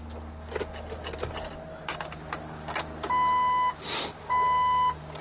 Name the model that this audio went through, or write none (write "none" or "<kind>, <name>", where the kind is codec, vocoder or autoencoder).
none